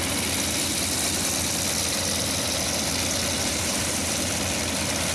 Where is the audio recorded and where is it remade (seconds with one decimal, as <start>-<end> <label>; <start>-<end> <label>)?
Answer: 0.0-3.5 recorded; 3.5-4.3 remade; 4.3-5.1 recorded